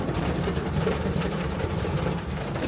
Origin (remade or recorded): remade